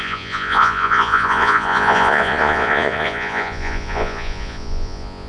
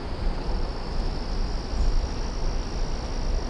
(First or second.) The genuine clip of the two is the second